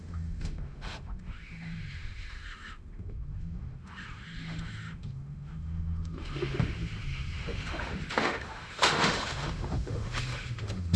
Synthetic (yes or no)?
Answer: yes